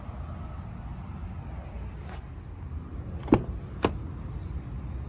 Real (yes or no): yes